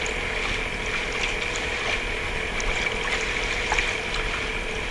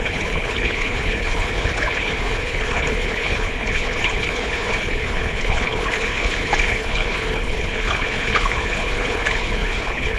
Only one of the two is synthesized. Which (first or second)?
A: second